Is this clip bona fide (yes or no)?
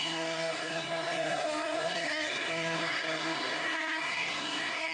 no